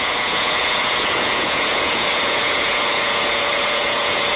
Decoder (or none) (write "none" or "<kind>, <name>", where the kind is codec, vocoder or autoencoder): vocoder, Vocos